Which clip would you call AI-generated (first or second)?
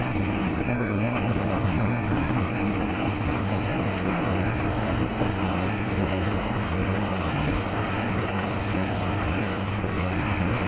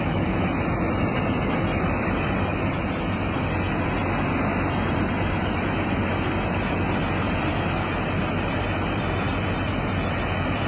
first